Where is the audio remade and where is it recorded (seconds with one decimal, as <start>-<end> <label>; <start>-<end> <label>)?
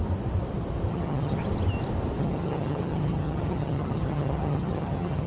0.0-0.9 recorded; 0.9-1.4 remade; 1.4-2.2 recorded; 2.2-5.3 remade